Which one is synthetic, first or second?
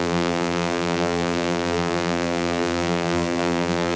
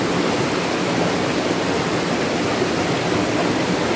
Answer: first